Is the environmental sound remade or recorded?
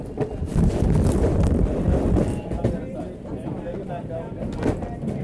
recorded